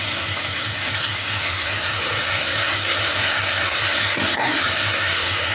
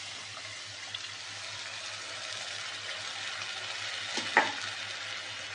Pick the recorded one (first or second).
second